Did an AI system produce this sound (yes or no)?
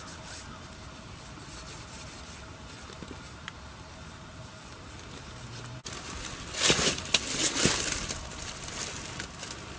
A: no